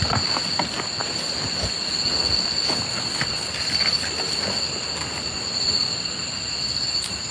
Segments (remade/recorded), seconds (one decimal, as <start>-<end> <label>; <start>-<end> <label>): 0.0-7.3 recorded